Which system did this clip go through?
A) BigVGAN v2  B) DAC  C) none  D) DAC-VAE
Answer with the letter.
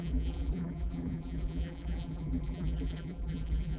A